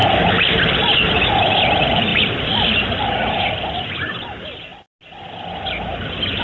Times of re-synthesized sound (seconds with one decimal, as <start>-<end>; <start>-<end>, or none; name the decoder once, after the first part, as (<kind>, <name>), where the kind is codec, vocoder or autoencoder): 0.0-4.7 (vocoder, BigVGAN v2)